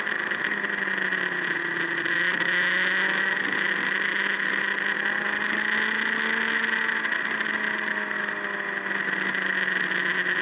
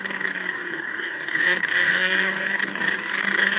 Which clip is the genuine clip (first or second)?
first